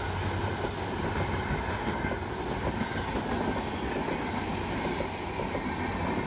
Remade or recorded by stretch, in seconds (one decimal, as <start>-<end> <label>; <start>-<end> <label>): 0.0-6.3 recorded

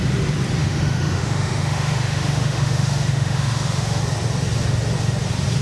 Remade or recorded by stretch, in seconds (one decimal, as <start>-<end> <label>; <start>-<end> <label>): 0.0-0.6 recorded; 0.6-4.0 remade; 4.0-5.6 recorded

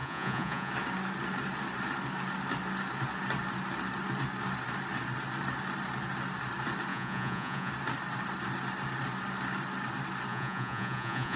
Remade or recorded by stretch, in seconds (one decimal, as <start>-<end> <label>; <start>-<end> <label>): 0.0-0.7 remade; 0.7-6.9 recorded; 6.9-7.7 remade; 7.7-10.3 recorded; 10.3-11.4 remade

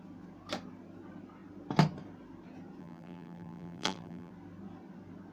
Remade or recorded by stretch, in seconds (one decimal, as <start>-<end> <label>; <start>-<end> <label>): 0.0-2.8 recorded; 2.8-4.3 remade; 4.3-5.3 recorded

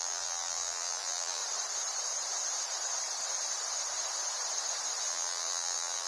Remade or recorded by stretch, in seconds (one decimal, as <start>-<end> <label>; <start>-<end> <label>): 0.0-1.4 remade; 1.4-5.1 recorded; 5.1-6.1 remade